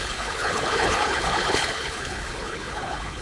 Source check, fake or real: fake